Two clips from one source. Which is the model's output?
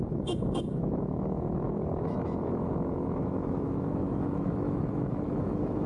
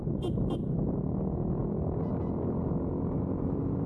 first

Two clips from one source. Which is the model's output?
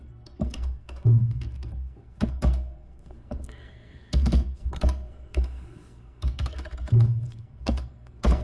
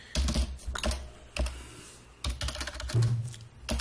first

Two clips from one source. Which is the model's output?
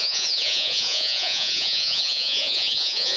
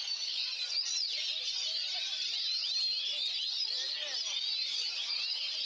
first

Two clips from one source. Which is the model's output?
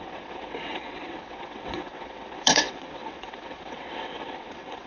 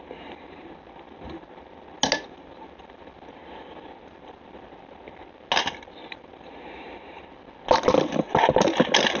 first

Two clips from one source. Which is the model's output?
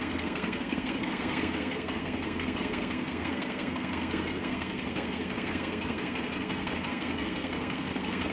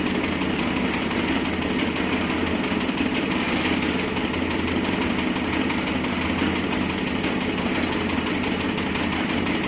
first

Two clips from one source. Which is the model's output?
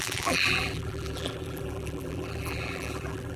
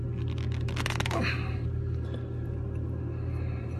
first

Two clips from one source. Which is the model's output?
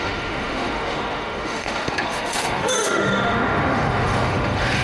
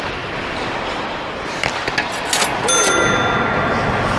first